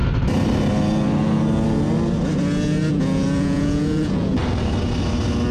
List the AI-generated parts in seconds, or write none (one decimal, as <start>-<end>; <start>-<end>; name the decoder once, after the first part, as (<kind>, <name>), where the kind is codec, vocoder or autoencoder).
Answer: 2.9-4.4 (vocoder, Vocos)